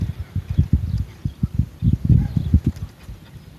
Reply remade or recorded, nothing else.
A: recorded